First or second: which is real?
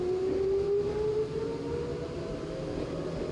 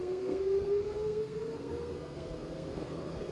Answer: first